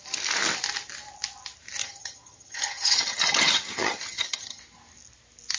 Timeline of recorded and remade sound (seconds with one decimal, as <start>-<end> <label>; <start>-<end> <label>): 0.0-1.8 recorded; 1.8-4.6 remade; 4.6-5.6 recorded